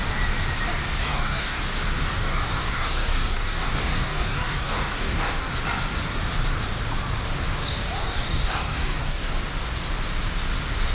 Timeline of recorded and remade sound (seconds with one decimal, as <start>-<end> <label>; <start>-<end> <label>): 0.0-1.0 recorded; 1.0-1.6 remade; 1.6-2.0 recorded; 2.0-5.5 remade; 5.5-8.0 recorded; 8.0-9.3 remade; 9.3-10.9 recorded